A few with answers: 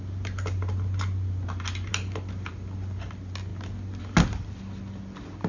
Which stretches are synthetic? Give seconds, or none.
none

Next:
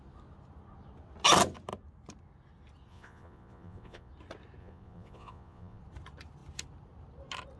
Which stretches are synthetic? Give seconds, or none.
2.9-4.1 (vocoder, Vocos); 4.6-5.8

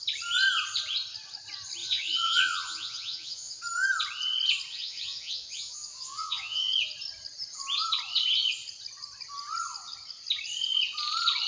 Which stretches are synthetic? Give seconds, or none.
1.8-3.6 (vocoder, Vocos); 4.7-6.7

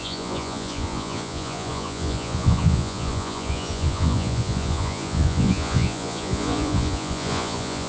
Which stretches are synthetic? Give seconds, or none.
0.0-7.9 (vocoder, Vocos)

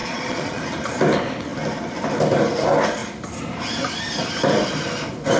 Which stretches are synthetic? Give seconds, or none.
0.0-0.6 (vocoder, Vocos)

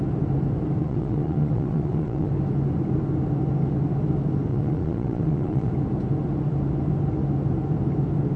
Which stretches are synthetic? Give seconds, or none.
0.8-2.3 (vocoder, Vocos); 4.5-5.7